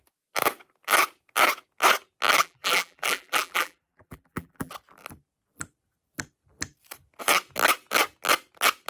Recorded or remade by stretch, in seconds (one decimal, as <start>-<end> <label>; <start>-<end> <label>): 0.0-2.4 recorded; 2.4-4.7 remade; 4.7-8.9 recorded